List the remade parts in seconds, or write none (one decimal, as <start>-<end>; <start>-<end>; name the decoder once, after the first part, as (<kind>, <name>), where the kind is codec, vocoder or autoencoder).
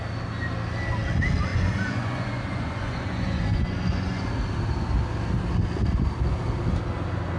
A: 1.5-4.3 (vocoder, Vocos)